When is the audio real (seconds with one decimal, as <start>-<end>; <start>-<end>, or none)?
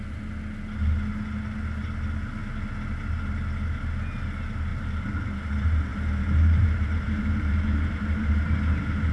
0.0-5.9; 8.3-9.1